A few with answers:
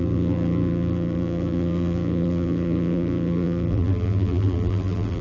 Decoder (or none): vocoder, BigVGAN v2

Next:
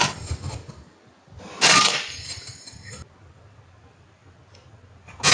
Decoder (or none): none